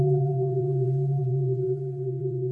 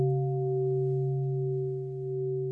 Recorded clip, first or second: second